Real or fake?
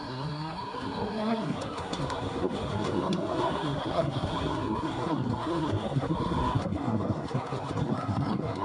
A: fake